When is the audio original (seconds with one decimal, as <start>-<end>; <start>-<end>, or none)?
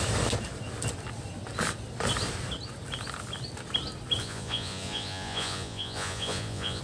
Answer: 0.0-4.2